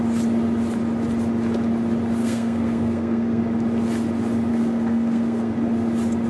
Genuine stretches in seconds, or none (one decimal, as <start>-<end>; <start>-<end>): 0.0-2.2; 3.4-4.5; 5.5-6.3